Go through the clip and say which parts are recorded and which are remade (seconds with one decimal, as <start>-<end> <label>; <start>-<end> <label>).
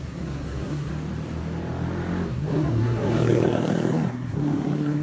0.0-0.9 remade; 0.9-2.3 recorded; 2.3-5.0 remade